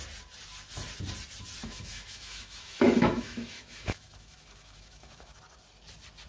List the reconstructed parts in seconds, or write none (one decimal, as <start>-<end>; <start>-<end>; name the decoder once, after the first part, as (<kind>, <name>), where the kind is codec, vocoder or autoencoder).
1.6-5.4 (autoencoder, DAC-VAE)